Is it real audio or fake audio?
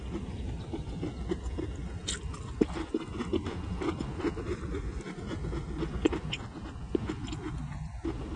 real